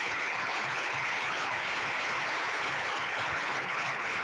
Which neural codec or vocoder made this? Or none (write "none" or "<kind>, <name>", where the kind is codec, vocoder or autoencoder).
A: codec, HILCodec